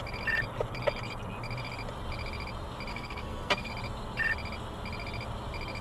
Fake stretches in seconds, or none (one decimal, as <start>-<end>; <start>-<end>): 2.9-3.7